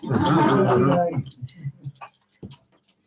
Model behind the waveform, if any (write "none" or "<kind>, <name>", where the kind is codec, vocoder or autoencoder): vocoder, BigVGAN v2